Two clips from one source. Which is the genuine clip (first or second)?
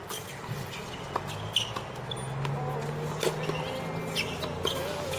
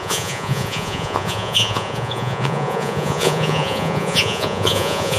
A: first